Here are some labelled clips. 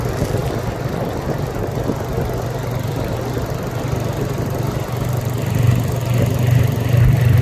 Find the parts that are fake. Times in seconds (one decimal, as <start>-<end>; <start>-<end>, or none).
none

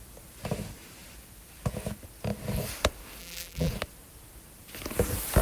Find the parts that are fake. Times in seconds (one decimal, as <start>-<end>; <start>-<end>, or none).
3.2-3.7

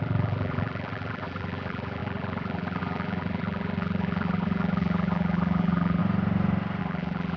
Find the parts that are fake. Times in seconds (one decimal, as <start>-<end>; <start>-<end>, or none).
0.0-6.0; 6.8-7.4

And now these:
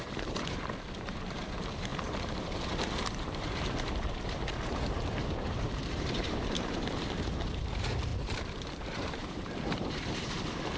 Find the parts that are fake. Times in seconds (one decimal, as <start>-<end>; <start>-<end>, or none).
0.0-8.1; 8.7-10.8

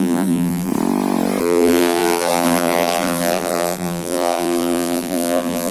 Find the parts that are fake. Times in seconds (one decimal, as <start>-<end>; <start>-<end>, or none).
0.0-0.7; 1.4-5.7

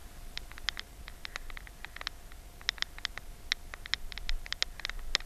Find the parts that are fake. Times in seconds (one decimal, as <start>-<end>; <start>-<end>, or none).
none